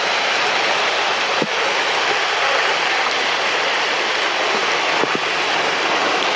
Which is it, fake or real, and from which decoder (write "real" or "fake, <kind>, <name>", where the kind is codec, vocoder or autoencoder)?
real